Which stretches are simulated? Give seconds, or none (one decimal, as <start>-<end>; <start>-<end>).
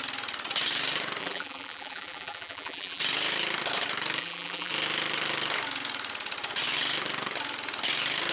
1.2-3.0; 4.2-4.7